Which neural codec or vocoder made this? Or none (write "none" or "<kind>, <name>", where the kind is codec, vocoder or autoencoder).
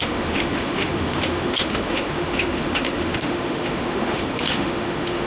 autoencoder, DAC-VAE